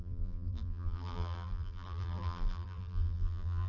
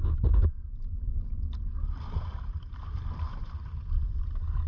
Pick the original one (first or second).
second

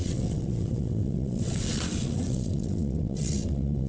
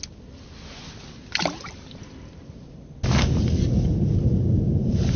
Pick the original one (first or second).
second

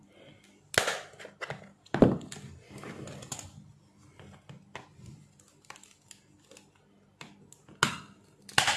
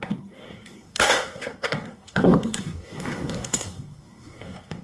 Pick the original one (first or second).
first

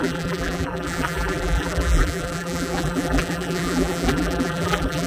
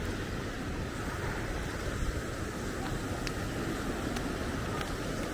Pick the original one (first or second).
second